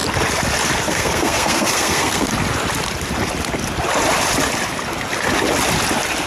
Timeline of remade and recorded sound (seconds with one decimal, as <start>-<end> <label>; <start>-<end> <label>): 0.0-0.9 recorded; 0.9-2.3 remade; 2.3-6.3 recorded